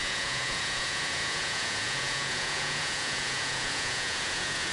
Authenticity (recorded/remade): remade